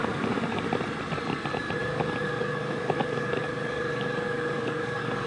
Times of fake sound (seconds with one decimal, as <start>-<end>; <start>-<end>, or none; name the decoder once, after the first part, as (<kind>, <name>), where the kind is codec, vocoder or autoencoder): 0.0-0.6 (codec, DAC); 1.8-5.3

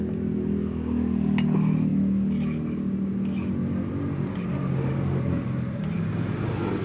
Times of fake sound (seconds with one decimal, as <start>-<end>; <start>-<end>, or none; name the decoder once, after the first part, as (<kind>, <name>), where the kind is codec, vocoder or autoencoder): none

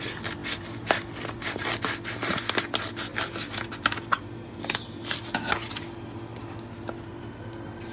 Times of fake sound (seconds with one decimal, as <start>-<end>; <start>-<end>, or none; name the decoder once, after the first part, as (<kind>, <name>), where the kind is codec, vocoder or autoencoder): none

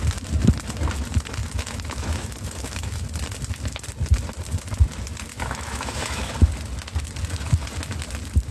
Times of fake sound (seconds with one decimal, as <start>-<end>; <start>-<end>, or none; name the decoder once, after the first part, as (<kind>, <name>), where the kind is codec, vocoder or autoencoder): 1.4-3.0 (autoencoder, DAC-VAE); 5.3-6.3